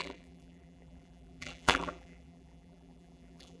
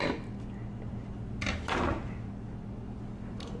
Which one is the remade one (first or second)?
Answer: first